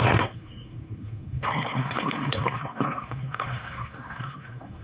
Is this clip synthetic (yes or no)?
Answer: yes